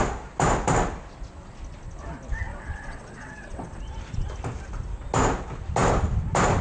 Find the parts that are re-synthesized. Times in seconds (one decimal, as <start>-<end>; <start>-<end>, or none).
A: 2.5-3.8